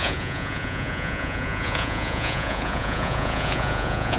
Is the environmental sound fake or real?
fake